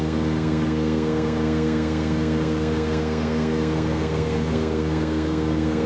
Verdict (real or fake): fake